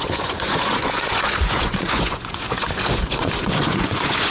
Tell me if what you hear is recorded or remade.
remade